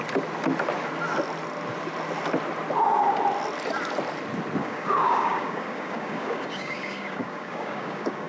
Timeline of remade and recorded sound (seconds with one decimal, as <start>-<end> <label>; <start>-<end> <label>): 0.0-4.6 recorded; 4.6-8.3 remade

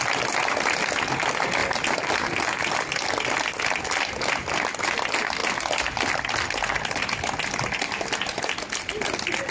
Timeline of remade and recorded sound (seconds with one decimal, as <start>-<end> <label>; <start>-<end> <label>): 0.0-9.5 recorded